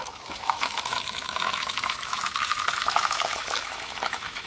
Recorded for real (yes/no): no